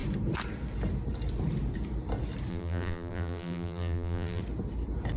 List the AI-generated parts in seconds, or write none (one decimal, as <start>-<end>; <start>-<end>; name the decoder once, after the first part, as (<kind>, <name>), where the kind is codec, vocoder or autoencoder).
2.5-4.4 (vocoder, BigVGAN v2)